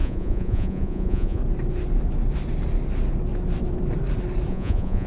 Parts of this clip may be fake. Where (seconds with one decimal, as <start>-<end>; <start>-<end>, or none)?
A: 0.0-1.4; 4.5-5.1